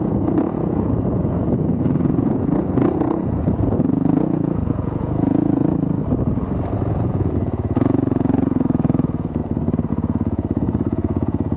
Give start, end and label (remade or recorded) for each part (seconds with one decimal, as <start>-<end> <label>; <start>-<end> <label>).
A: 0.0-5.6 remade; 5.6-6.9 recorded; 6.9-9.4 remade; 9.4-9.9 recorded; 9.9-11.6 remade